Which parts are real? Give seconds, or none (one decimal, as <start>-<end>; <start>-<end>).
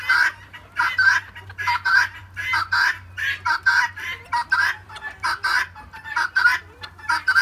0.0-7.4